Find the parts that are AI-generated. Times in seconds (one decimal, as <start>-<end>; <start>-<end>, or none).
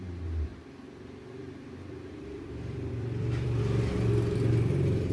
0.5-3.6